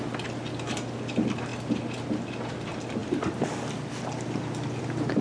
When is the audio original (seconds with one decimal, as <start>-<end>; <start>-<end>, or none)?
0.0-5.2